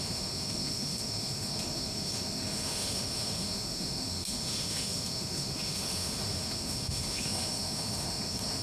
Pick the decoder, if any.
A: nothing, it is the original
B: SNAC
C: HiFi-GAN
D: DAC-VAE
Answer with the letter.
D